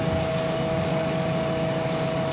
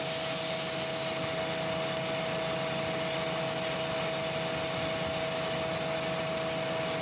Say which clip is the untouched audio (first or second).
second